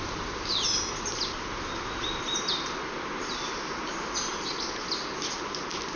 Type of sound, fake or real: real